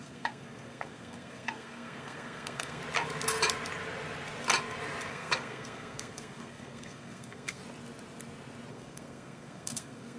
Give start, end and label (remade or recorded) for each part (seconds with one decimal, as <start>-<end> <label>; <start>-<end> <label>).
0.0-2.8 remade; 2.8-5.1 recorded; 5.1-7.6 remade; 7.6-8.7 recorded; 8.7-10.2 remade